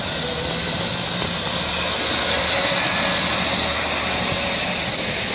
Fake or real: real